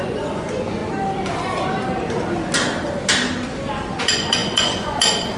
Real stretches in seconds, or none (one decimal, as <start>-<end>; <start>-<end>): 0.8-4.0